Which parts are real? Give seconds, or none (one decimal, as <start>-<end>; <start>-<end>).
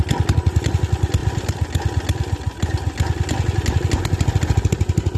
0.0-5.2